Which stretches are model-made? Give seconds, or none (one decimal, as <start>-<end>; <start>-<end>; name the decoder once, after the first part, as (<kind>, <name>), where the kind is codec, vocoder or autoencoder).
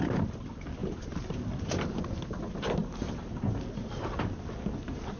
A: 0.8-2.0 (vocoder, BigVGAN v2)